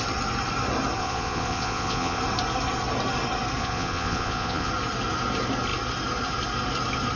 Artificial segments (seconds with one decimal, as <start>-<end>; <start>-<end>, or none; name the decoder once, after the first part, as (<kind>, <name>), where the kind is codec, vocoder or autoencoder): 1.0-2.2 (vocoder, Vocos); 3.6-4.7